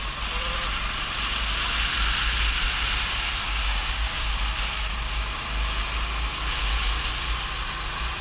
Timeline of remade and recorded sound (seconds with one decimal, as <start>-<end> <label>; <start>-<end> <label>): 0.0-3.6 recorded; 3.6-4.3 remade; 4.3-8.2 recorded